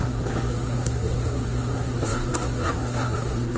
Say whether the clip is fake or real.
fake